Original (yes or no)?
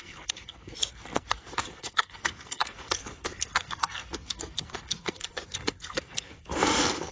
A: no